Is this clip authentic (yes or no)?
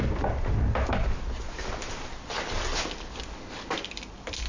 yes